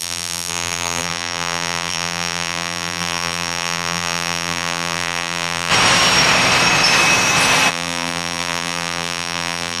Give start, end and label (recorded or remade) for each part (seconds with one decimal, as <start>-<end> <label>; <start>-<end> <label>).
0.0-5.7 remade; 5.7-7.7 recorded; 7.7-9.8 remade